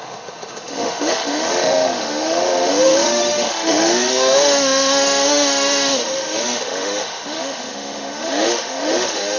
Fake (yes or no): yes